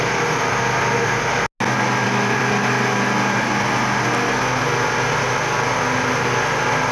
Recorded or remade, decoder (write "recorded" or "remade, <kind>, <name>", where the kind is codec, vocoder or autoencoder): recorded